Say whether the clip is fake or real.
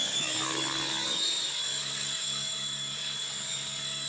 fake